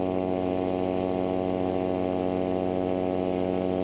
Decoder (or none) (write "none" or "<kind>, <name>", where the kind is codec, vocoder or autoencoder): none